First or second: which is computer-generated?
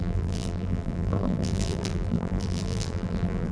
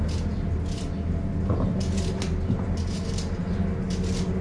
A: first